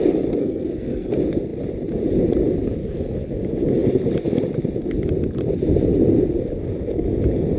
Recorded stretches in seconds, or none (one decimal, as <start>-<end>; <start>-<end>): 0.0-0.4; 1.1-2.8; 3.3-7.6